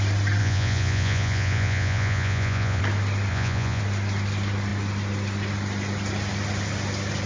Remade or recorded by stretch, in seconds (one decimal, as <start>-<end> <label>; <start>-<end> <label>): 0.0-0.4 recorded; 0.4-2.8 remade; 2.8-3.3 recorded; 3.3-3.8 remade; 3.8-7.3 recorded